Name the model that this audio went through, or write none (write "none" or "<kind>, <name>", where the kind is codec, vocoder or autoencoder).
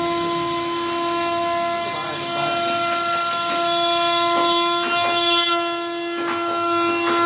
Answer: none